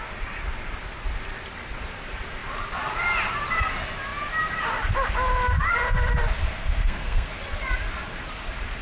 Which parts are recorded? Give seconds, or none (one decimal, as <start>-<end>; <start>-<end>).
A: 0.0-6.6; 7.3-8.8